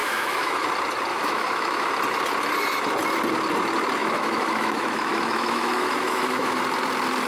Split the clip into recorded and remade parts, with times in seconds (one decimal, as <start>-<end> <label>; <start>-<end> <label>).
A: 0.0-0.7 remade; 0.7-1.1 recorded; 1.1-1.9 remade; 1.9-4.0 recorded; 4.0-6.6 remade; 6.6-7.3 recorded